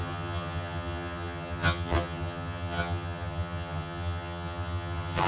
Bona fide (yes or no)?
no